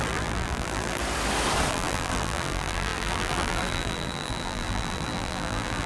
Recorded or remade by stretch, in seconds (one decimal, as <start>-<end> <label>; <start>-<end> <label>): 0.0-1.0 remade; 1.0-1.7 recorded; 1.7-5.9 remade